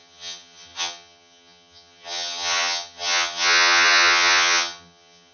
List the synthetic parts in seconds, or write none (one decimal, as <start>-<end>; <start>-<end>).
0.0-5.3